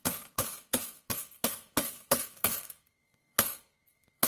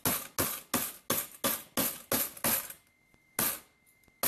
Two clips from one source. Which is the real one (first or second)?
second